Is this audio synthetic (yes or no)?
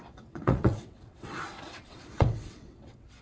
yes